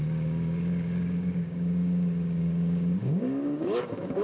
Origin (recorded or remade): remade